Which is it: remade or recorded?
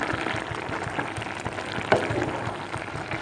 remade